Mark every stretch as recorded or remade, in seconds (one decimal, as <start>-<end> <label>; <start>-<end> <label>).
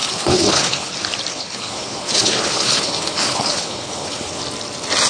0.0-0.9 remade; 0.9-1.3 recorded; 1.3-4.4 remade; 4.4-5.1 recorded